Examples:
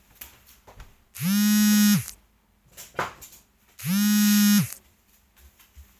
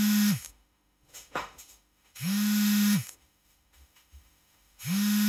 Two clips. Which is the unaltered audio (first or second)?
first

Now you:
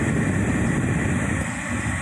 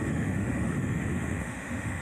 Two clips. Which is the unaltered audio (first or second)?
first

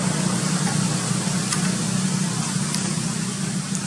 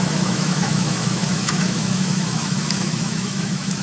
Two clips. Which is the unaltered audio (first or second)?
first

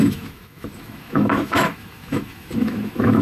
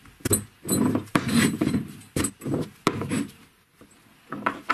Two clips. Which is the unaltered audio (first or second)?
second